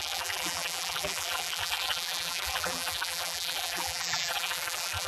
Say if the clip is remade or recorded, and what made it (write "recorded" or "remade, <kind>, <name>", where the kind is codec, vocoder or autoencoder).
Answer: remade, vocoder, BigVGAN v2